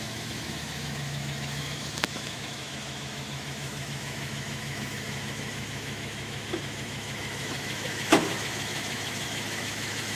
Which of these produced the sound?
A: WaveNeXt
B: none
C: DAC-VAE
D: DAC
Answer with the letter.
C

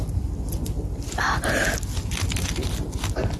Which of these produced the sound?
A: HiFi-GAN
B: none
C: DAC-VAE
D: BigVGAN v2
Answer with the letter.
B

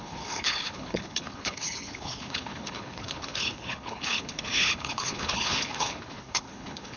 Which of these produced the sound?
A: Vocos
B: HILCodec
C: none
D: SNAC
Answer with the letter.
B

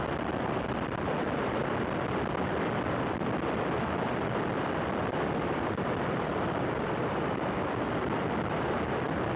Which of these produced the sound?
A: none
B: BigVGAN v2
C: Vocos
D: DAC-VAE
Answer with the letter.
B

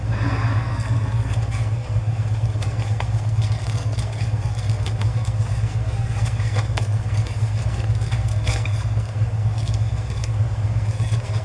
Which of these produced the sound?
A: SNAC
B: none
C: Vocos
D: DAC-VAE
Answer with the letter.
A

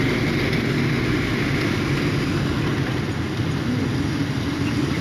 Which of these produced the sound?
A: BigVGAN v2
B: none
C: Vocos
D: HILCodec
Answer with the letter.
B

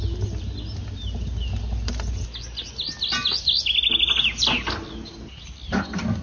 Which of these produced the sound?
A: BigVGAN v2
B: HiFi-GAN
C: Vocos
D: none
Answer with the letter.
D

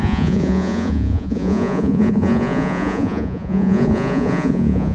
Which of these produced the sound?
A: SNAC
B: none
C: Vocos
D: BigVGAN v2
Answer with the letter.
C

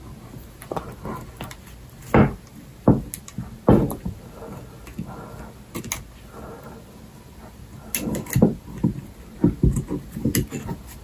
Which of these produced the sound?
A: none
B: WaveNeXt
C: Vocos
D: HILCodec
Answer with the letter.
A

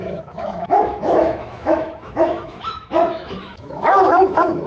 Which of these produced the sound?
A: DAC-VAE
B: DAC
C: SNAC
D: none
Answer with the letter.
A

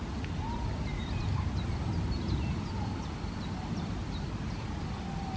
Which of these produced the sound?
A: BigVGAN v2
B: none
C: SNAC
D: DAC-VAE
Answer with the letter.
B